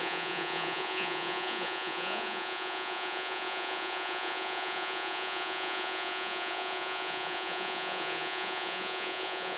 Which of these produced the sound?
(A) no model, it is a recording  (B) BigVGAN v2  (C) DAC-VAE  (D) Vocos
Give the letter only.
D